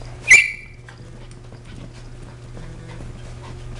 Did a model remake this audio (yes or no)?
no